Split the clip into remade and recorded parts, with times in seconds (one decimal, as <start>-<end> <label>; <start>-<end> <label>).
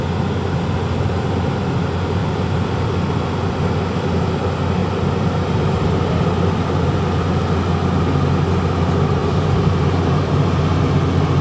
0.0-2.2 recorded; 2.2-2.9 remade; 2.9-4.8 recorded; 4.8-7.0 remade; 7.0-9.2 recorded; 9.2-10.9 remade; 10.9-11.4 recorded